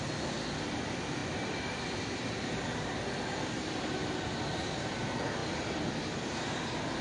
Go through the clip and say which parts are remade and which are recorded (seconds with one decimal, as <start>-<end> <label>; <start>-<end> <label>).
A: 0.0-7.0 recorded